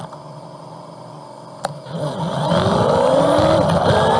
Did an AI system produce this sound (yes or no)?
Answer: no